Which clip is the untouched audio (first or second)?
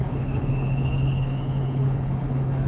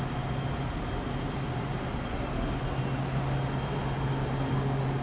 second